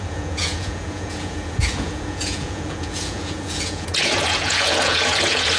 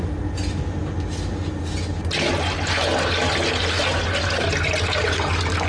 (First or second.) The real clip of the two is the second